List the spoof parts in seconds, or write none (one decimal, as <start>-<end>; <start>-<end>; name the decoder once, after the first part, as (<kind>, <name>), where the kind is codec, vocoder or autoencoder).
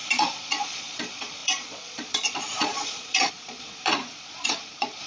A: 0.0-5.1 (vocoder, Vocos)